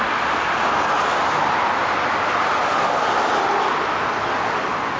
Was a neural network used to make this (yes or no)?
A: no